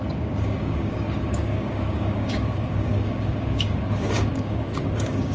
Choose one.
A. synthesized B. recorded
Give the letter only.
A